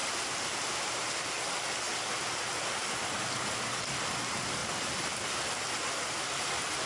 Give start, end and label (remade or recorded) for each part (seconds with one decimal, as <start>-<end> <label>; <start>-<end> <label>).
0.0-6.9 recorded